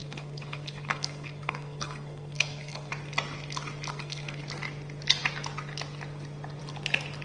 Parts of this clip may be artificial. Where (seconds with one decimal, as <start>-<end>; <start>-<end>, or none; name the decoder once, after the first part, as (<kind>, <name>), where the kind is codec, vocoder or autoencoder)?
0.0-2.9 (codec, SNAC); 3.9-4.4